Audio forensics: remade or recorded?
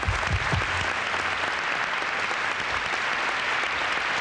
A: recorded